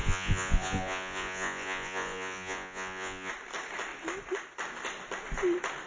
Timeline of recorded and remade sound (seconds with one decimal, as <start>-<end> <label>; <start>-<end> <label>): 0.0-3.3 remade; 3.3-5.9 recorded